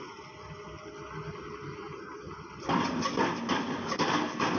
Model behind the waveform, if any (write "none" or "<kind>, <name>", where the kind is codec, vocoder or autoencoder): none